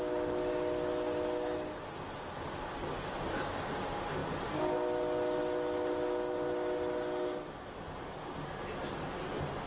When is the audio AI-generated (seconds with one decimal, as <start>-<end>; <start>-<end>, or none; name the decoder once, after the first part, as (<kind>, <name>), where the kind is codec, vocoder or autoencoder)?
none